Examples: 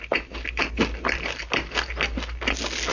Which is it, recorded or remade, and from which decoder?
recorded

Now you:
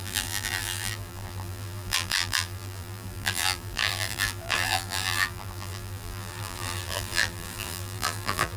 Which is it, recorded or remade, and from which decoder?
remade, vocoder, BigVGAN v2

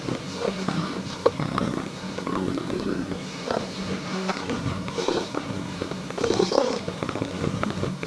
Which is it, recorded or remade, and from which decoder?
remade, codec, SNAC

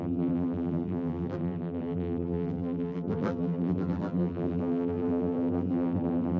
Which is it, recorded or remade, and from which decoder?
remade, vocoder, BigVGAN v2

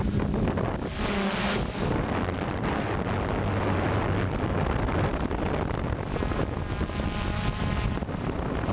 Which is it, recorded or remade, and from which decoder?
recorded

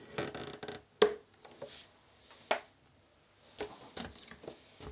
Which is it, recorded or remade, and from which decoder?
recorded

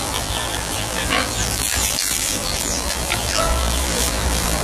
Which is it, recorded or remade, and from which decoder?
remade, vocoder, BigVGAN v2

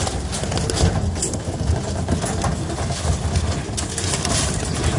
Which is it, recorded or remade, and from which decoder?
recorded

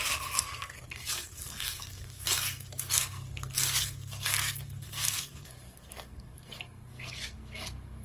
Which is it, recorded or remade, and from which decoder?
remade, codec, SNAC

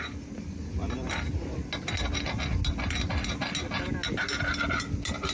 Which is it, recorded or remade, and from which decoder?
recorded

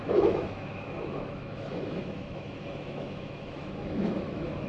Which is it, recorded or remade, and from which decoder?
remade, autoencoder, DAC-VAE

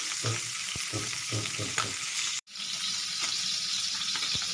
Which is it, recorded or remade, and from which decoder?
remade, vocoder, BigVGAN v2